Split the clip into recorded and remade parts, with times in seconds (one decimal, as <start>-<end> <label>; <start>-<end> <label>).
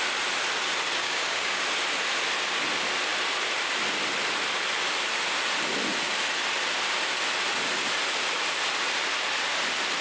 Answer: 0.0-1.0 recorded; 1.0-1.6 remade; 1.6-10.0 recorded